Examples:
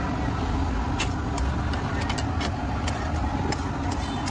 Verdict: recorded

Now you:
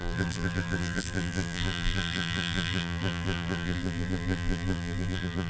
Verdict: remade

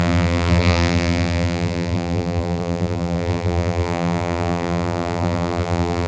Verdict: remade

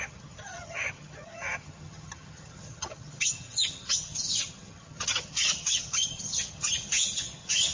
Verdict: remade